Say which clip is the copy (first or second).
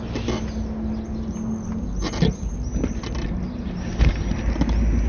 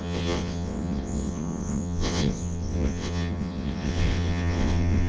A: second